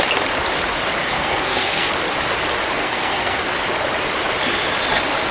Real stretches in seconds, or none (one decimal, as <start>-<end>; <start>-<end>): 0.0-1.0; 1.9-2.8; 3.4-5.3